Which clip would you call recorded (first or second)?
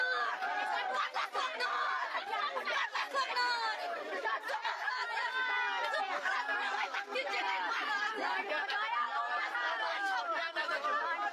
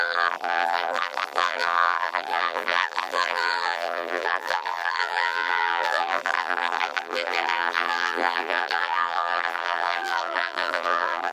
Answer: first